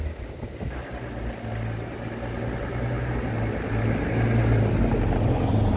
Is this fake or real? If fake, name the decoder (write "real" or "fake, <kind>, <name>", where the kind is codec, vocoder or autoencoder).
real